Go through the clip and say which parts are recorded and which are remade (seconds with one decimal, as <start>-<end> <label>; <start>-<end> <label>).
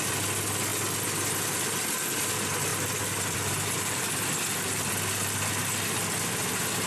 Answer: 0.0-2.7 recorded; 2.7-4.9 remade; 4.9-6.9 recorded